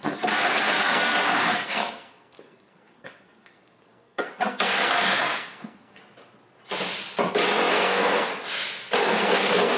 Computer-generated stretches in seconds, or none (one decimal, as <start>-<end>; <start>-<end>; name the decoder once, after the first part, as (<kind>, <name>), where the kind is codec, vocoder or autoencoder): 0.0-6.0 (codec, SNAC); 7.7-8.3; 9.0-9.8